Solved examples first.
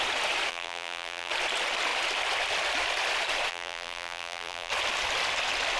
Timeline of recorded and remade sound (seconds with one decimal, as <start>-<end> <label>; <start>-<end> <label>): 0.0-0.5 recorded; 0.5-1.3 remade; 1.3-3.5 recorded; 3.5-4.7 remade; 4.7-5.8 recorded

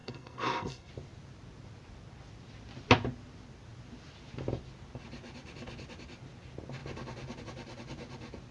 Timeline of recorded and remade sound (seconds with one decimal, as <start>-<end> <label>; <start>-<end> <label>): 0.0-0.9 remade; 0.9-8.5 recorded

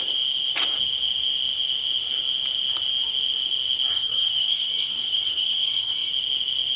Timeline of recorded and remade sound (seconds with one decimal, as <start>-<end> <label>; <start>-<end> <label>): 0.0-3.9 recorded; 3.9-6.1 remade; 6.1-6.8 recorded